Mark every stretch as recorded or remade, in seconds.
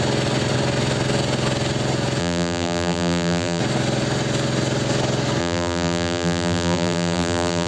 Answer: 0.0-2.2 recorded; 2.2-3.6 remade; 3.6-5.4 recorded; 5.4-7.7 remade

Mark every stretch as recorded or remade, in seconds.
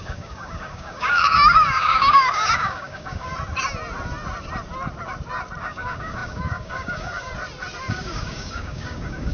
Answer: 0.0-3.3 remade; 3.3-5.6 recorded; 5.6-7.3 remade; 7.3-7.9 recorded; 7.9-9.3 remade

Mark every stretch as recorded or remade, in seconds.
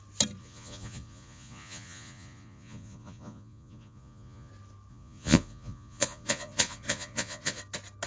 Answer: 0.0-0.4 recorded; 0.4-4.5 remade; 4.5-4.9 recorded; 4.9-7.6 remade; 7.6-8.1 recorded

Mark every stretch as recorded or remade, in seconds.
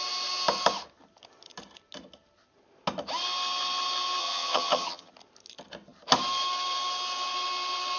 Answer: 0.0-4.2 recorded; 4.2-5.1 remade; 5.1-8.0 recorded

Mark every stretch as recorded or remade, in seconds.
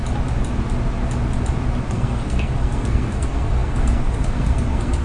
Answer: 0.0-1.9 recorded; 1.9-5.0 remade